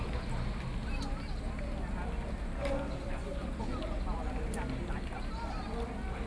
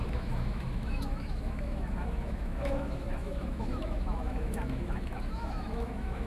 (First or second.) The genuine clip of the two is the first